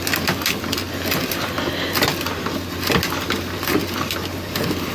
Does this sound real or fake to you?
real